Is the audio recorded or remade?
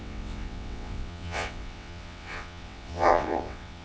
remade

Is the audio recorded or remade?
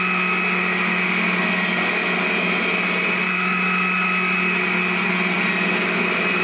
recorded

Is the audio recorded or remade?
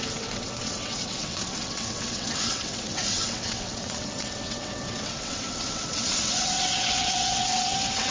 remade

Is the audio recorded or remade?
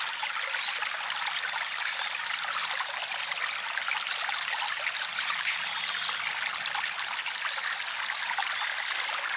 recorded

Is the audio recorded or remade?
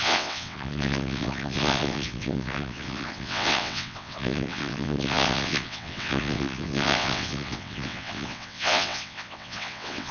remade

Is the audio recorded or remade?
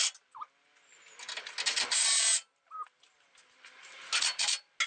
recorded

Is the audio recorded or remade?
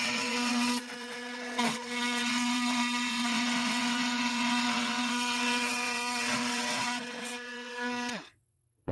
remade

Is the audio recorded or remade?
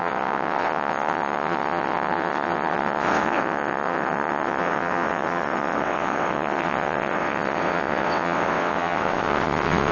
remade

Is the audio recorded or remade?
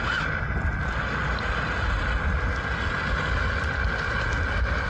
recorded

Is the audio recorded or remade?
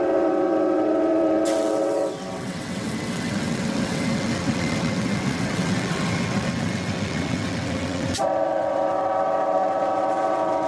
remade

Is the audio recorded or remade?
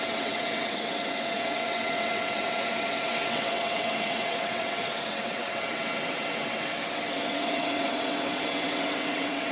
remade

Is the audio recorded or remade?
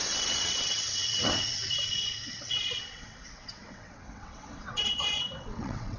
remade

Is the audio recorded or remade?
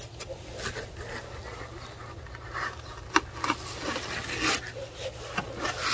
recorded